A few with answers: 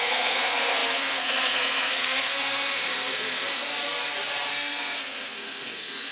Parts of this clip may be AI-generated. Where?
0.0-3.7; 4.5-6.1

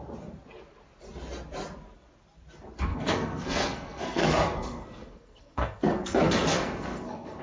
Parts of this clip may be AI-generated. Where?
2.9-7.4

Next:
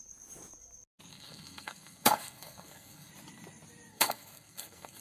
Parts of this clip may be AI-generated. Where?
1.1-3.1; 3.9-5.0

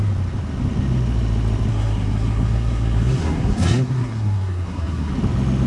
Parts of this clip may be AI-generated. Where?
1.7-5.1